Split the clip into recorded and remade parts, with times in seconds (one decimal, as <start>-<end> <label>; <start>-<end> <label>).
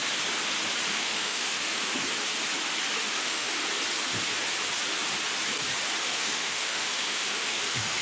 0.0-0.9 recorded; 0.9-1.9 remade; 1.9-3.1 recorded; 3.1-3.6 remade; 3.6-6.0 recorded; 6.0-8.0 remade